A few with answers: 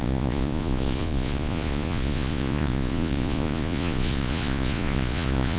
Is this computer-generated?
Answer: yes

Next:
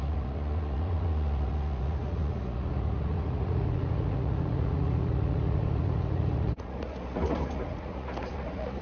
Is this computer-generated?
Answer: yes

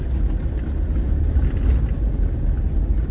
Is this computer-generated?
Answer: no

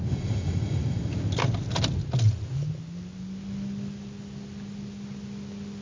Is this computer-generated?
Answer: no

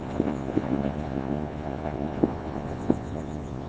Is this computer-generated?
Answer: yes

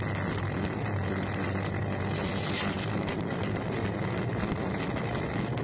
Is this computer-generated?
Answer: no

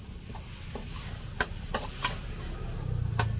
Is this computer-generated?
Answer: no